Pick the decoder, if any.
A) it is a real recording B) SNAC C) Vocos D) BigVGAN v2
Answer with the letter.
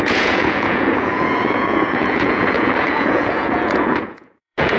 C